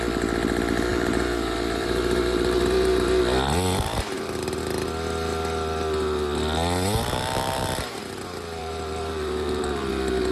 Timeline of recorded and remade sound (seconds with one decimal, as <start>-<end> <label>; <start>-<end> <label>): 0.0-0.9 recorded; 0.9-3.2 remade; 3.2-8.6 recorded; 8.6-9.9 remade; 9.9-10.3 recorded